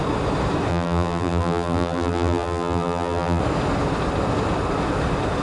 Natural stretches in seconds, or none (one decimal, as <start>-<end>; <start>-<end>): 0.0-0.7; 3.4-5.4